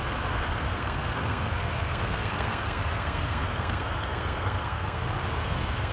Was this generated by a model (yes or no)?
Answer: yes